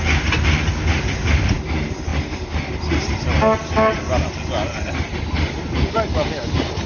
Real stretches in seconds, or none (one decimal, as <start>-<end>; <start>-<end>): 0.0-6.9

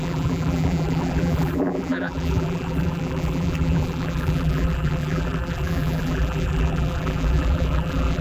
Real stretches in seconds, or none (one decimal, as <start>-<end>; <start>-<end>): none

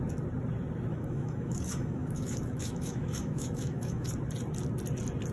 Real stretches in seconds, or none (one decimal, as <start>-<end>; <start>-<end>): 0.0-0.9; 4.1-5.3

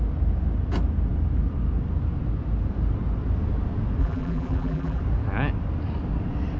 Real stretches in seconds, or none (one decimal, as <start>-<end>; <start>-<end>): 0.0-4.0; 5.0-6.6

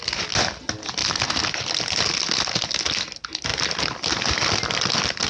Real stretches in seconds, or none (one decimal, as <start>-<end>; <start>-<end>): 0.0-5.3